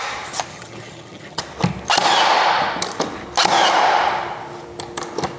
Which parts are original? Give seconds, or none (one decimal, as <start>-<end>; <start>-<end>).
0.0-0.5; 1.4-5.4